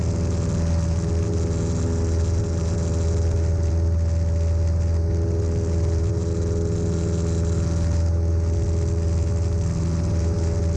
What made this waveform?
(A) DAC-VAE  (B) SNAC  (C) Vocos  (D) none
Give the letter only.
D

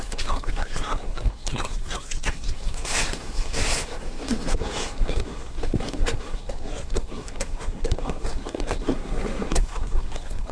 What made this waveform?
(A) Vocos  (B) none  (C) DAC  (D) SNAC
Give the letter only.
D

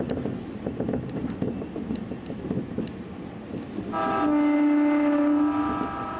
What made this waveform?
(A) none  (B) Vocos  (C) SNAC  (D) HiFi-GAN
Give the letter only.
A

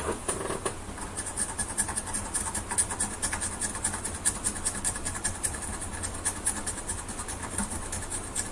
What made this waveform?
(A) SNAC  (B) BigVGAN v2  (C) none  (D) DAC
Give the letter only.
C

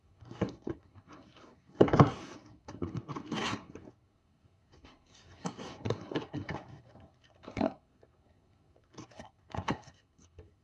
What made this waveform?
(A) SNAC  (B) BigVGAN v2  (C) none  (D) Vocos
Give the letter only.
A